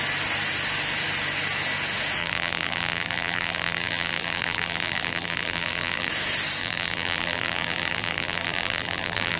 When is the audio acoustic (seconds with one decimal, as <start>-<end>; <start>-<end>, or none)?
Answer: 0.0-2.2; 6.1-6.6